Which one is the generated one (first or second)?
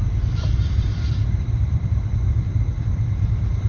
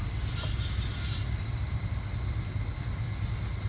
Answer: first